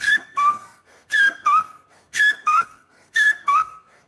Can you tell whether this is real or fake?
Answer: fake